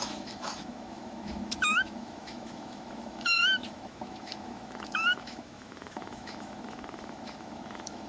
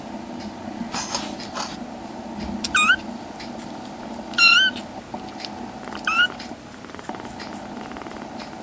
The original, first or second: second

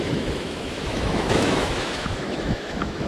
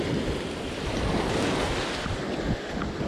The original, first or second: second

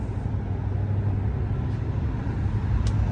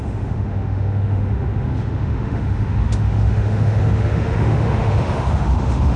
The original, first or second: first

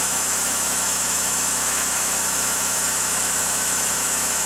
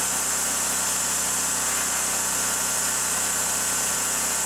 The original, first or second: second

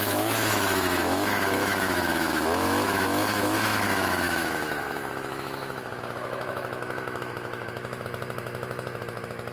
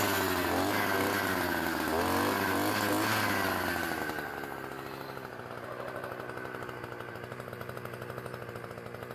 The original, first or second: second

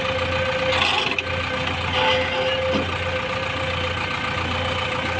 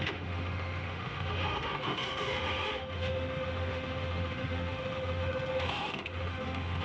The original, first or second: first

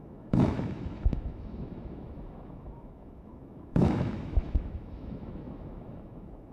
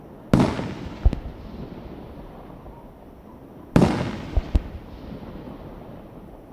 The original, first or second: second